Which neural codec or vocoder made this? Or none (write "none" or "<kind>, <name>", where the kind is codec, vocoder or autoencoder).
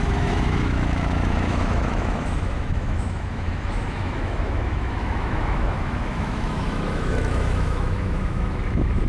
autoencoder, DAC-VAE